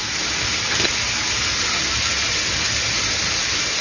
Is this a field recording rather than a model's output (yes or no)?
yes